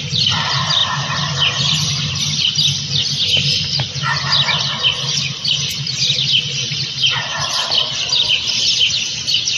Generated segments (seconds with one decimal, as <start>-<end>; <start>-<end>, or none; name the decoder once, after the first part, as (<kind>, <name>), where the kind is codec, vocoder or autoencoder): 0.8-3.6 (vocoder, BigVGAN v2); 7.3-8.4

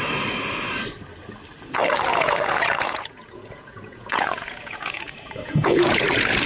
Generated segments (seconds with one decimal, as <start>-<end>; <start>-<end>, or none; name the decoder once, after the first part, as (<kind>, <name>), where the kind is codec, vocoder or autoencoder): 2.1-6.0 (vocoder, Vocos)

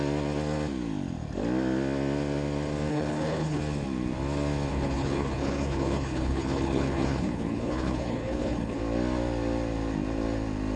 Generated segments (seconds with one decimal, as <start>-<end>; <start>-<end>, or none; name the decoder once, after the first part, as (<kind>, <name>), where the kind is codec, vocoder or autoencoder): 2.9-3.6 (codec, HILCodec); 4.7-8.8